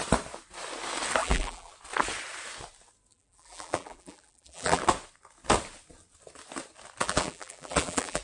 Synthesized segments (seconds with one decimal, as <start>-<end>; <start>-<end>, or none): 1.2-1.7; 3.1-4.8; 7.0-8.2